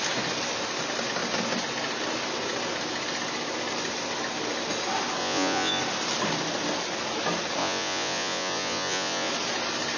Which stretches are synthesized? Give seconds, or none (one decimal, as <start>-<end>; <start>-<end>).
5.2-5.8; 7.6-9.3